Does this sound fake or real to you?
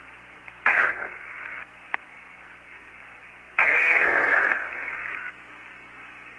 fake